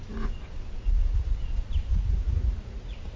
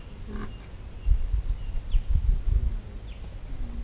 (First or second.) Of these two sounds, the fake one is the first